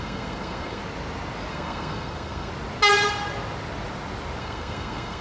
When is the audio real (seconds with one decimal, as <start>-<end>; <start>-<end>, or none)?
0.8-1.5; 2.5-4.4